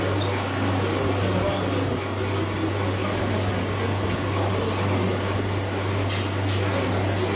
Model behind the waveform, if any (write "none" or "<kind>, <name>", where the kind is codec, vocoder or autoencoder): none